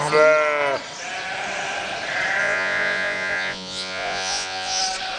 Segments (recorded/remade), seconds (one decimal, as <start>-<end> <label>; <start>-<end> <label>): 0.0-2.4 recorded; 2.4-4.8 remade; 4.8-5.2 recorded